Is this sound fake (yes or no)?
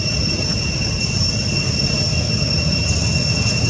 no